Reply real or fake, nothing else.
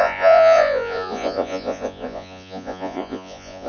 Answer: fake